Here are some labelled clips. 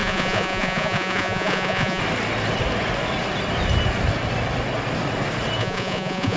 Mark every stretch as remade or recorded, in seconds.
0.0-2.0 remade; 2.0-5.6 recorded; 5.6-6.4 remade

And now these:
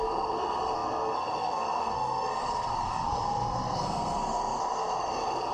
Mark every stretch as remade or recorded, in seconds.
0.0-5.5 remade

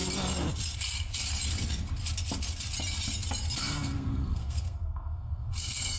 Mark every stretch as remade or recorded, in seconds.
0.0-3.6 recorded; 3.6-6.0 remade

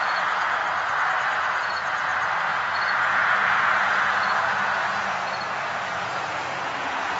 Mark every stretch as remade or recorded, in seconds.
0.0-0.6 remade; 0.6-1.6 recorded; 1.6-2.1 remade; 2.1-2.7 recorded; 2.7-7.2 remade

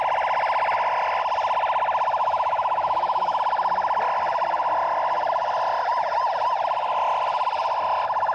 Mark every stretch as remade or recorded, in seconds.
0.0-2.2 recorded; 2.2-3.4 remade; 3.4-8.3 recorded

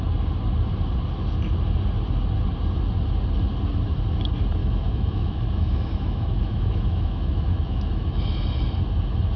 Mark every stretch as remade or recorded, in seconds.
0.0-4.6 recorded; 4.6-8.2 remade; 8.2-9.4 recorded

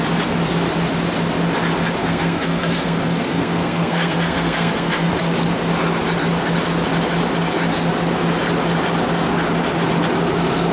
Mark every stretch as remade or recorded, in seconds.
0.0-2.0 recorded; 2.0-5.1 remade; 5.1-10.7 recorded

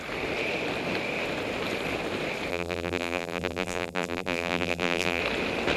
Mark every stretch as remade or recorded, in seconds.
0.0-2.5 recorded; 2.5-5.2 remade; 5.2-5.8 recorded